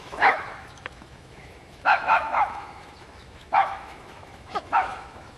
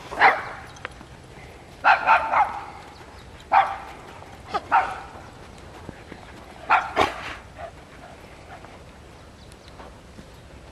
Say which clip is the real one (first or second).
second